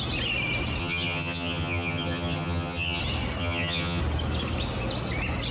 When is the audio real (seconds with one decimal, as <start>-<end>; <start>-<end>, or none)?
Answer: 0.0-0.8; 3.0-3.4; 4.0-5.5